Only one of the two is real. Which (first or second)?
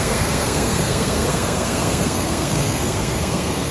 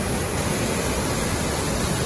second